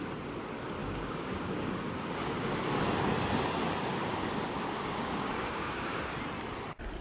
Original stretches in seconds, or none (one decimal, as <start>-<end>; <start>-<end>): 0.0-0.8; 2.6-3.9; 6.0-7.0